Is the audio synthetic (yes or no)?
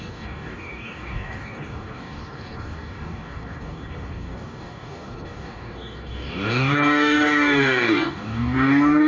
yes